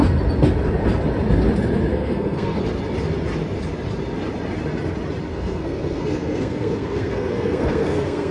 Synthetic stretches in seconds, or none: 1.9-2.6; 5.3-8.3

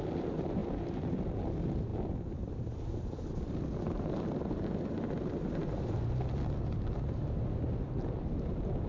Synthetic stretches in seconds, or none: 0.6-1.5; 1.9-7.0

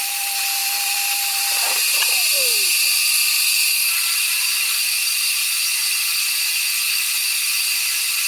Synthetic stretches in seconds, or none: 0.0-5.4; 6.8-7.5